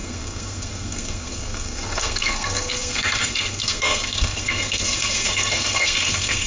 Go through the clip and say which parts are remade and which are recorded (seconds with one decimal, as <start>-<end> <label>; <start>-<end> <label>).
0.0-6.5 remade